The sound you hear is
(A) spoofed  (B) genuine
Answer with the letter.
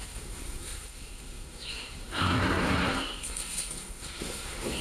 A